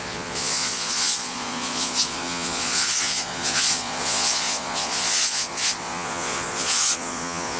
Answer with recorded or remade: remade